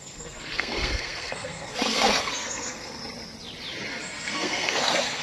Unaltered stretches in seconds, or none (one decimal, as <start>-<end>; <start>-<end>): 3.0-3.9